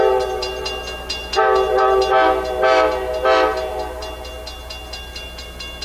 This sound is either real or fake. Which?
real